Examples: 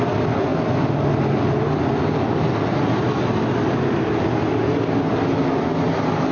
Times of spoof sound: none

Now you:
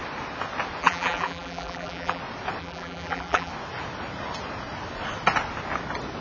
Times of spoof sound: 0.8-2.2 (vocoder, BigVGAN v2); 2.6-3.5

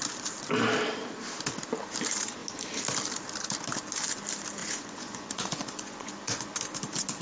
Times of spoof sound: 4.6-6.5 (vocoder, Vocos)

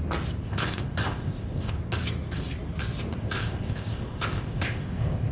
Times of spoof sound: 0.4-1.8 (codec, ZipCodec); 3.2-5.3